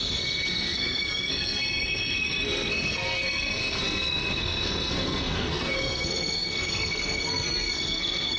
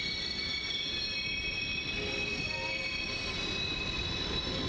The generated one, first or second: first